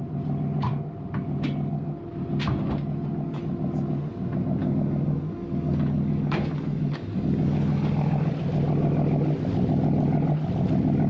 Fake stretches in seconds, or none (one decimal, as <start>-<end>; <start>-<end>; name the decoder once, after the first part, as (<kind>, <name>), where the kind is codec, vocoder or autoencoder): 4.6-8.3 (codec, DAC)